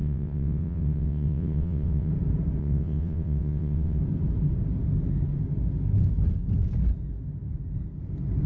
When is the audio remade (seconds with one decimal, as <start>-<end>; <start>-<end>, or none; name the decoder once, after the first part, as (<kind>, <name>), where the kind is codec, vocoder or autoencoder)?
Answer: 0.0-2.1 (vocoder, WaveNeXt); 2.6-4.0